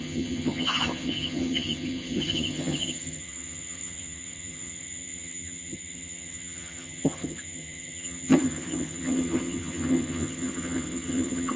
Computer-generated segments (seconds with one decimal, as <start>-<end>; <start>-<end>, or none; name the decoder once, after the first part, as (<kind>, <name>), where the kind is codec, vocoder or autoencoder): 0.0-11.6 (vocoder, HiFi-GAN)